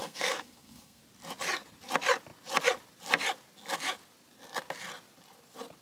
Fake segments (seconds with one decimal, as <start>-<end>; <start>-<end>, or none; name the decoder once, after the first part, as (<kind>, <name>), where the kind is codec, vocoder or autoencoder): 0.0-1.0 (codec, SNAC)